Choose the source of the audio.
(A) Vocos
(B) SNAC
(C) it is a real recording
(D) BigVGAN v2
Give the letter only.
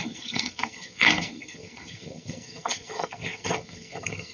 B